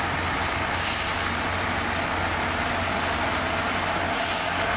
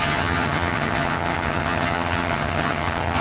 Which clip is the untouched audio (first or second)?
first